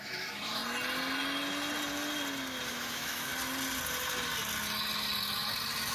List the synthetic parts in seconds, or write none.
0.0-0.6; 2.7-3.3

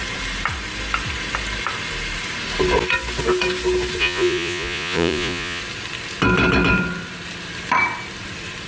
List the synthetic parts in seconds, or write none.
4.0-5.6